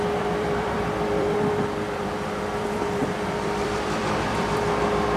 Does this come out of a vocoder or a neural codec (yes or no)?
yes